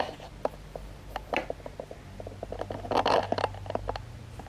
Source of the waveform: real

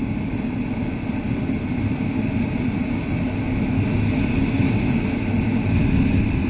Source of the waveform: real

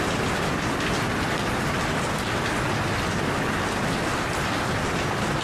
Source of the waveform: real